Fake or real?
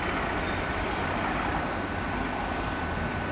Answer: real